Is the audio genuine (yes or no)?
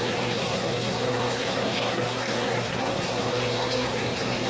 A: no